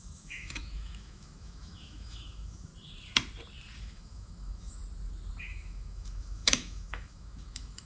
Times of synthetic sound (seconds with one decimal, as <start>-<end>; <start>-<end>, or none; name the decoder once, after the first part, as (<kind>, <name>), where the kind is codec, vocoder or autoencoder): 0.0-2.7 (autoencoder, DAC-VAE); 3.8-4.8; 5.4-7.8